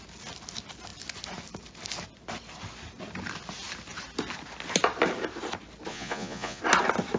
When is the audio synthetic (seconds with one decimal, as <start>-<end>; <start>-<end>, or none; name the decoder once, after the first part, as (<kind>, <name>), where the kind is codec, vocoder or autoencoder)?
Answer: 5.9-6.6 (vocoder, Vocos)